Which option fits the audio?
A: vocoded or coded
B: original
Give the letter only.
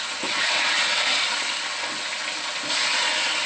B